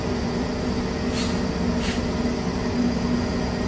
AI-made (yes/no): no